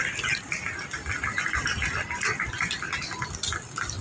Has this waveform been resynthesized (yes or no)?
no